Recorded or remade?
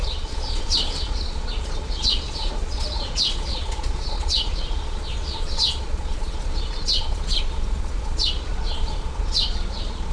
remade